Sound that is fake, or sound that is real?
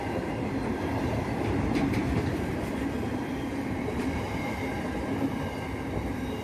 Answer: fake